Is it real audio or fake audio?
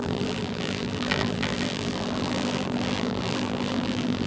fake